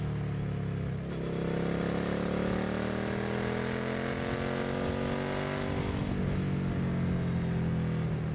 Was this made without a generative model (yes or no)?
yes